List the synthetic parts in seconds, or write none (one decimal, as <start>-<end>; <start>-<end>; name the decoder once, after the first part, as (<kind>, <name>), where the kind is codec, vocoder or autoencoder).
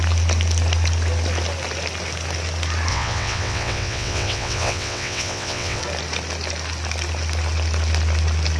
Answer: 2.9-5.8 (vocoder, WaveNeXt)